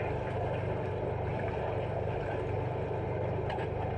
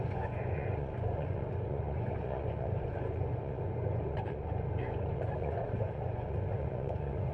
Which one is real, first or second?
first